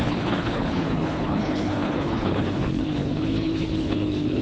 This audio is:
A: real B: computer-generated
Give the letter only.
B